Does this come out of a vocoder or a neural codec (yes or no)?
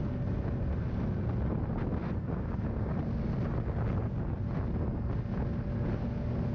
no